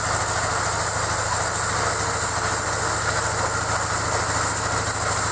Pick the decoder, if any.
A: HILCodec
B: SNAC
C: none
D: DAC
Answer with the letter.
C